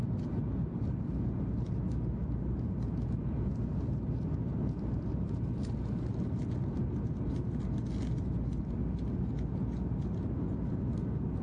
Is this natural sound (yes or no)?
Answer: yes